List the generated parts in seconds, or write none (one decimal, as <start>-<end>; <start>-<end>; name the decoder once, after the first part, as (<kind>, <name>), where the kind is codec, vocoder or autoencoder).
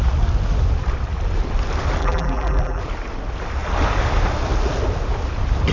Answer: 2.0-2.8 (vocoder, BigVGAN v2)